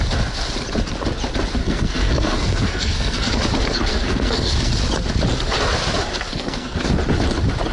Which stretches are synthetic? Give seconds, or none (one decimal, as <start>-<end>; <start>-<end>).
1.6-3.3; 3.9-4.7; 6.3-6.9